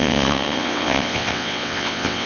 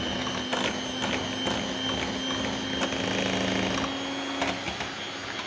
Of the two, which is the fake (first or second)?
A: first